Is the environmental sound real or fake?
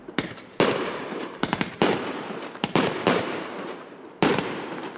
fake